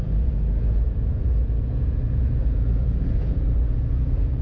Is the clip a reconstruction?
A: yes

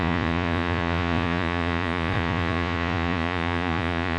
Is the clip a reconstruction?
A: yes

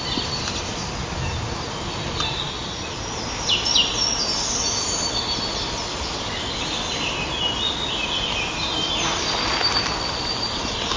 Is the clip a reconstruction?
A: no